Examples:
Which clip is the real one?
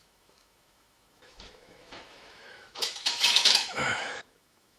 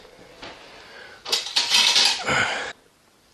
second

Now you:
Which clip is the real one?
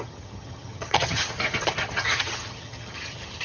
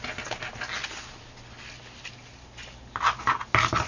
second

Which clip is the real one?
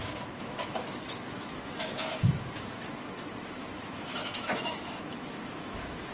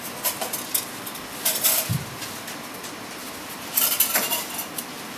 second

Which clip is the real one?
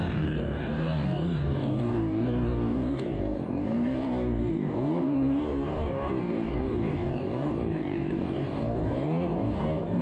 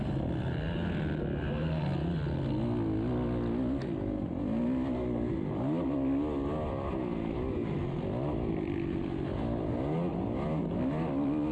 second